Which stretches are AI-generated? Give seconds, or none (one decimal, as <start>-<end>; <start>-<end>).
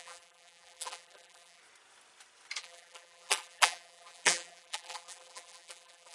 0.0-1.6; 2.6-6.1